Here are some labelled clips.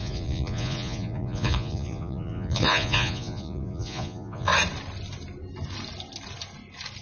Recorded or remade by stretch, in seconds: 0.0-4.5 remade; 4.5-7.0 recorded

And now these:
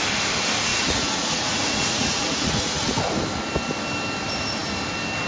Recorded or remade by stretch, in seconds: 0.0-0.7 recorded; 0.7-3.0 remade; 3.0-5.3 recorded

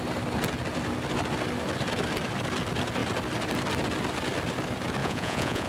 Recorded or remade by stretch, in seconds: 0.0-5.0 recorded; 5.0-5.7 remade

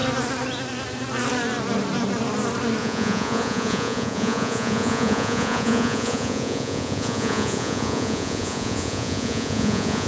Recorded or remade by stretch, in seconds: 0.0-2.8 recorded; 2.8-10.1 remade

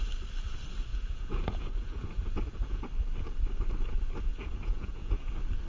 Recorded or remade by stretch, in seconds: 0.0-0.9 recorded; 0.9-2.8 remade; 2.8-4.3 recorded; 4.3-5.3 remade; 5.3-5.7 recorded

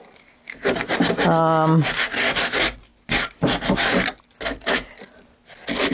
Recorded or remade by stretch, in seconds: 0.0-5.9 recorded

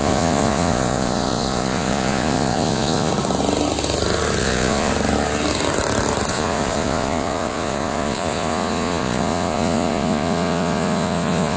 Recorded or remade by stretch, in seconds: 0.0-3.1 remade; 3.1-4.4 recorded; 4.4-4.9 remade; 4.9-6.3 recorded; 6.3-11.6 remade

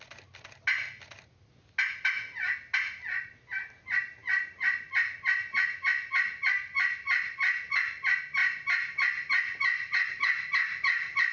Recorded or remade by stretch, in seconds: 0.0-11.3 recorded